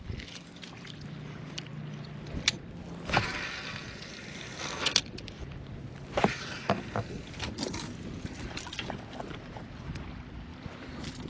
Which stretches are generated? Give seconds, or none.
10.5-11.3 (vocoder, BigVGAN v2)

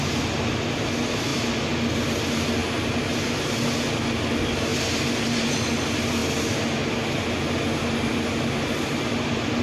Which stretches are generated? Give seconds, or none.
none

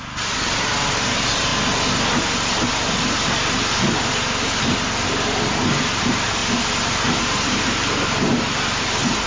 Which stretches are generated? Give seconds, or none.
0.0-1.5 (vocoder, BigVGAN v2); 6.0-6.4; 7.2-9.3

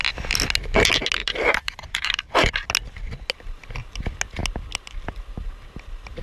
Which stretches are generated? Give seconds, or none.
1.2-2.7 (vocoder, BigVGAN v2)

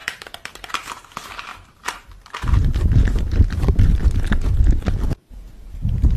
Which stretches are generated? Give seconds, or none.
0.0-0.7 (vocoder, BigVGAN v2); 1.5-4.6